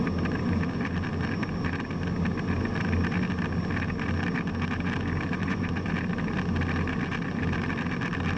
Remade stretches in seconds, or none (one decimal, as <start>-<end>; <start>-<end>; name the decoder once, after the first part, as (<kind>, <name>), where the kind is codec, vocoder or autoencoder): 5.4-5.9 (vocoder, Vocos)